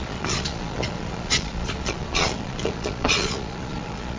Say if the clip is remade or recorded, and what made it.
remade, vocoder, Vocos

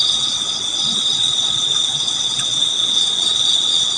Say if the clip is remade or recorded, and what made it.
remade, vocoder, WaveNeXt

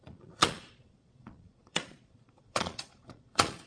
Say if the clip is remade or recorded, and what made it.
remade, vocoder, Vocos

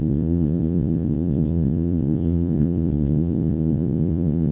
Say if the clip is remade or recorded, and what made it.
remade, vocoder, Vocos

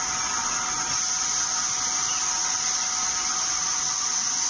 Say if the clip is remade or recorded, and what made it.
recorded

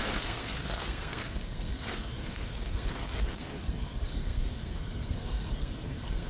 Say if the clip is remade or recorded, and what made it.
remade, codec, SNAC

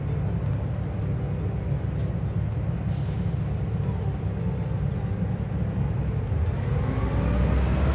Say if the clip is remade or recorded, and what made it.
recorded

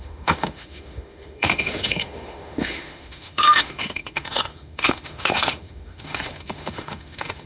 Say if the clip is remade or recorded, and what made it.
remade, autoencoder, DAC-VAE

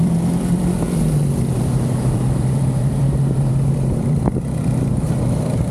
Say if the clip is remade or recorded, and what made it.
remade, vocoder, BigVGAN v2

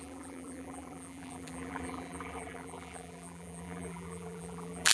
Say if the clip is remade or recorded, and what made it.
remade, vocoder, BigVGAN v2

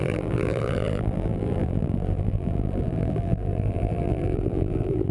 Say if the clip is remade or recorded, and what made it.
remade, vocoder, BigVGAN v2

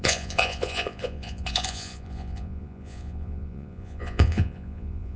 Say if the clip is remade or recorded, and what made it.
remade, vocoder, Vocos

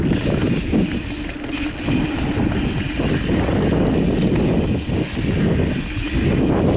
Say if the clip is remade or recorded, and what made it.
recorded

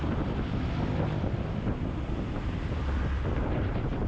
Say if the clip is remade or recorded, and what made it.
remade, vocoder, BigVGAN v2